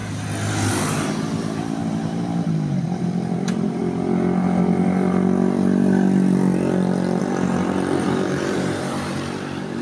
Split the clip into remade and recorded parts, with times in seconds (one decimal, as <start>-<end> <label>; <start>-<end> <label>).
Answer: 0.0-0.7 recorded; 0.7-3.8 remade; 3.8-7.2 recorded; 7.2-9.8 remade

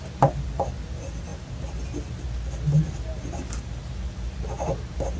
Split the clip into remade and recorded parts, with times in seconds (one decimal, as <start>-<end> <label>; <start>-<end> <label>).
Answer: 0.0-5.2 recorded

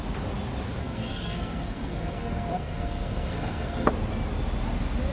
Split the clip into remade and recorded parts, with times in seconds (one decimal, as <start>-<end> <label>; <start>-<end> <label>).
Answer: 0.0-0.8 recorded; 0.8-3.9 remade; 3.9-5.1 recorded

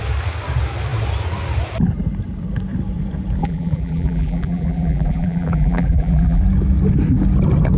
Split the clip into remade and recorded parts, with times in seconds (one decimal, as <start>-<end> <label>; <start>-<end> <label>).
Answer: 0.0-3.4 recorded; 3.4-6.4 remade; 6.4-7.8 recorded

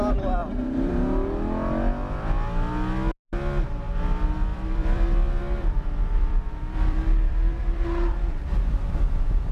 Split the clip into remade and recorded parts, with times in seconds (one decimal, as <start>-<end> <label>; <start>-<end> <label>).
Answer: 0.0-0.4 recorded; 0.4-0.9 remade; 0.9-4.5 recorded; 4.5-9.0 remade; 9.0-9.5 recorded

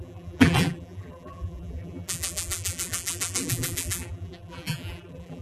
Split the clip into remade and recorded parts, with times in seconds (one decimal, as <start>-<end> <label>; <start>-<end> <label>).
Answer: 0.0-5.4 remade

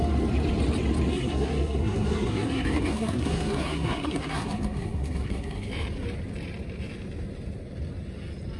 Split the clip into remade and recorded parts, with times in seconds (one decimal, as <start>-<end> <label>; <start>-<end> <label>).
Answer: 0.0-1.1 recorded; 1.1-5.7 remade; 5.7-8.6 recorded

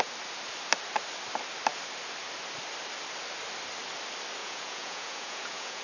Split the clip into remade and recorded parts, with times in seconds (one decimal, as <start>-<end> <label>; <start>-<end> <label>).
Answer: 0.0-4.4 recorded; 4.4-5.8 remade